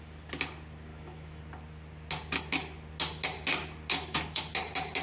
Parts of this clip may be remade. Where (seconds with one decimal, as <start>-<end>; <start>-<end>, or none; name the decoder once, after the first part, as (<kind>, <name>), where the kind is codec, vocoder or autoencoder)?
0.9-1.4 (autoencoder, DAC-VAE); 3.9-4.4